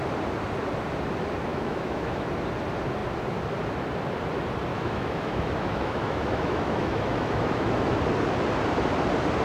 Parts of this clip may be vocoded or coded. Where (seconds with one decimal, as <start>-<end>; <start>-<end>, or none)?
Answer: 1.5-2.3; 4.7-8.0